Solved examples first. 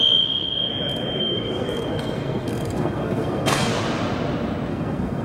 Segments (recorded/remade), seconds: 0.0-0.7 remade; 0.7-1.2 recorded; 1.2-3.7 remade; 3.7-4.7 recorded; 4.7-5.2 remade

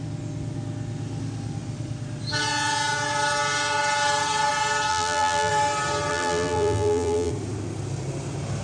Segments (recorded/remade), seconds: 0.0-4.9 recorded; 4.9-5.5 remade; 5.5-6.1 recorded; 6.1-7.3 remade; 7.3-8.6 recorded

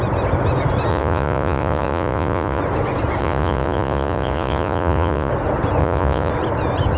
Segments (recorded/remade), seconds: 0.0-0.9 recorded; 0.9-2.6 remade; 2.6-3.2 recorded; 3.2-5.3 remade; 5.3-5.8 recorded; 5.8-6.3 remade; 6.3-7.0 recorded